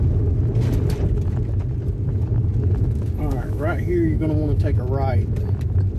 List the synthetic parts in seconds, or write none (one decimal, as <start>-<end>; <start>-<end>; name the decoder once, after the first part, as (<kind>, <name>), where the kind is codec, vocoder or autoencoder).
3.3-4.8 (autoencoder, DAC-VAE)